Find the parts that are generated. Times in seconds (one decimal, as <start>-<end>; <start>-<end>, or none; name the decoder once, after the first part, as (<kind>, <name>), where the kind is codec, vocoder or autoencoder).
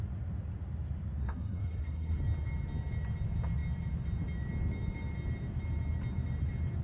1.2-2.2 (codec, SNAC)